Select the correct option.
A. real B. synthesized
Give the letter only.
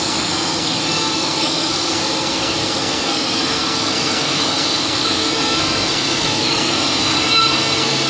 B